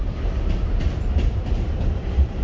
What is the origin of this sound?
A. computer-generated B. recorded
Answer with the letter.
A